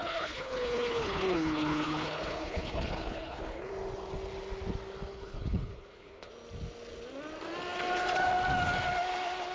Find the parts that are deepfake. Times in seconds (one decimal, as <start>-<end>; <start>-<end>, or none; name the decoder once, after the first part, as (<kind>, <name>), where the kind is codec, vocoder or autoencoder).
0.0-3.7 (codec, HILCodec); 5.1-6.3